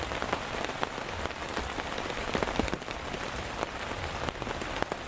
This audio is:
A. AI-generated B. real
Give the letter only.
A